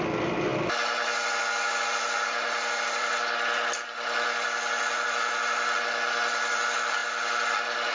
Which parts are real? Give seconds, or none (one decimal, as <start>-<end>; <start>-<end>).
0.0-7.9